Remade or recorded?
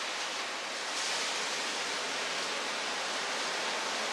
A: recorded